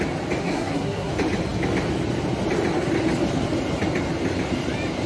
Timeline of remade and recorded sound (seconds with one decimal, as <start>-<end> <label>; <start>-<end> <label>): 0.0-0.4 recorded; 0.4-1.1 remade; 1.1-5.1 recorded